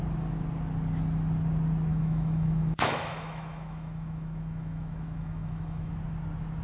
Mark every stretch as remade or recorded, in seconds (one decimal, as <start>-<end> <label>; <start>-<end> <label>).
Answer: 0.0-1.9 recorded; 1.9-5.9 remade; 5.9-6.6 recorded